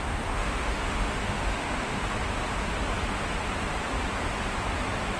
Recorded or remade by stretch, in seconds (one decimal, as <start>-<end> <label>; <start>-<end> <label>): 0.0-2.0 remade; 2.0-5.2 recorded